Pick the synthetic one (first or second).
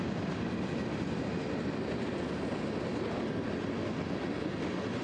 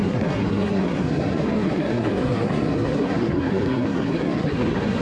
second